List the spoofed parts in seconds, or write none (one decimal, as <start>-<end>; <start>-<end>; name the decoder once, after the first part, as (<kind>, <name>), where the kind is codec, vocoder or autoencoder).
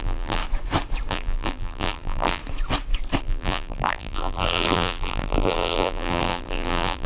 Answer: 0.0-0.4 (vocoder, BigVGAN v2); 1.1-2.4; 3.2-7.1